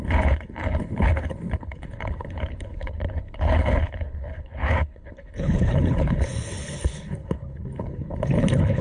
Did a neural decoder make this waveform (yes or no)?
yes